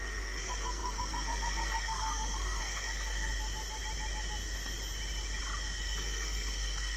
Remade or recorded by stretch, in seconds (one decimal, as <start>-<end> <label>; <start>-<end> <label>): 0.0-3.3 remade; 3.3-5.8 recorded; 5.8-7.0 remade